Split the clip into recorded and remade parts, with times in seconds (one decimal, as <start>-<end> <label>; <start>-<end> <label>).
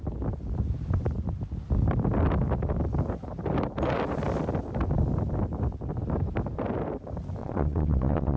0.0-7.4 recorded; 7.4-8.4 remade